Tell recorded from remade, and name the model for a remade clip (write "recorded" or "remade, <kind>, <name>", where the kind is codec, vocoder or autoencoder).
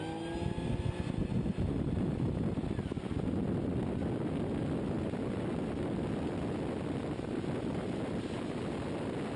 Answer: recorded